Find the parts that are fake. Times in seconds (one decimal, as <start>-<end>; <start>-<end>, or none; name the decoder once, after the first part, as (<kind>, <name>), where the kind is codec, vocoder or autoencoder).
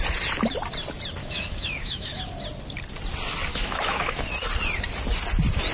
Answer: 1.2-2.2 (autoencoder, DAC-VAE); 3.5-4.2